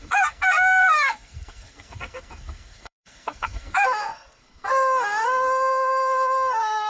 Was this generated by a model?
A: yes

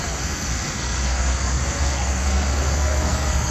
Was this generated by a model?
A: yes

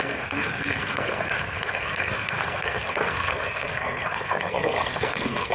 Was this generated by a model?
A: yes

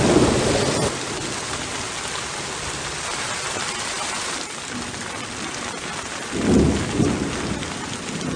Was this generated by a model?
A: no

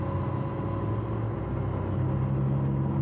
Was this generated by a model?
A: no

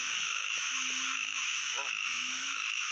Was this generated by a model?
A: yes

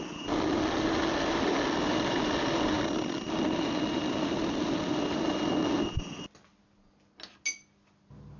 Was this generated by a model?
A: no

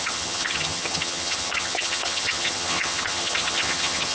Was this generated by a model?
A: yes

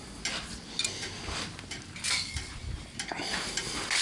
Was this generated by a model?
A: no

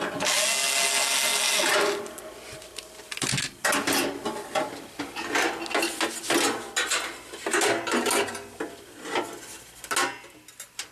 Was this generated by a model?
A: no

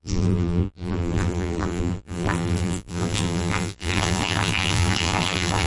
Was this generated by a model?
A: yes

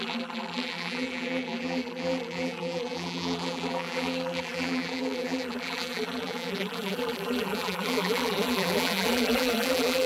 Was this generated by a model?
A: yes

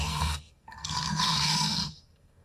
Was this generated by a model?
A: yes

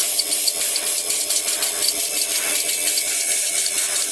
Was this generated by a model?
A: no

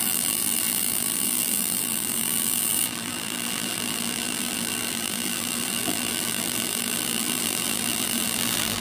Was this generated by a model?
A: yes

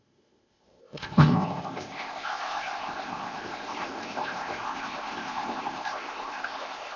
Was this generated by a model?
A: yes